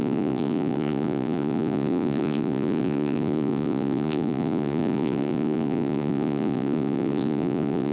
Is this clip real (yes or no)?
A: no